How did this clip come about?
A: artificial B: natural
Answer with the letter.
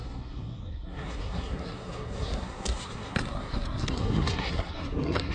A